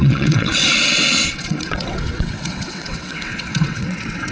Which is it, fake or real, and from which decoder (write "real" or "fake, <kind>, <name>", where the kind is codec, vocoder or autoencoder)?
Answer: fake, vocoder, WaveNeXt